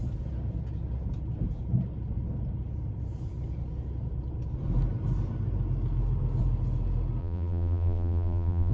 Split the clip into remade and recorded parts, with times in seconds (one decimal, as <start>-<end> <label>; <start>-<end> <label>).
0.0-7.2 recorded; 7.2-8.7 remade